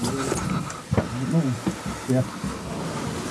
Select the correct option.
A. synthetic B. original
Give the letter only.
B